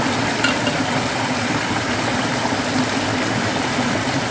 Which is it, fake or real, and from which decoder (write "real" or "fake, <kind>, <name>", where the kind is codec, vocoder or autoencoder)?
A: real